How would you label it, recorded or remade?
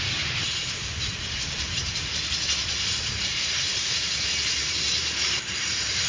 remade